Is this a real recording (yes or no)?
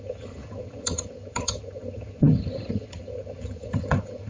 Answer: no